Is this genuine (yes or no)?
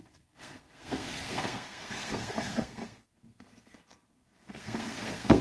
no